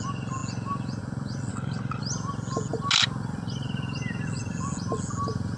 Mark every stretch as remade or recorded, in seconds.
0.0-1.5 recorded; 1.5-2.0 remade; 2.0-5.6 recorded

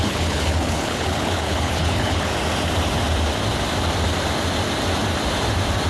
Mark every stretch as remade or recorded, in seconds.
0.0-2.3 remade; 2.3-5.9 recorded

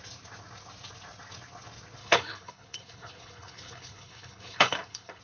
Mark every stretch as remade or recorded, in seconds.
0.0-2.0 recorded; 2.0-5.2 remade

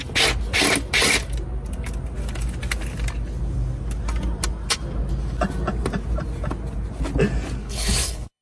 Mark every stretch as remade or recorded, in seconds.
0.0-7.6 recorded; 7.6-8.4 remade